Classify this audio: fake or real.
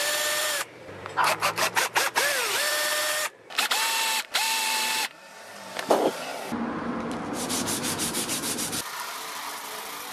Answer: fake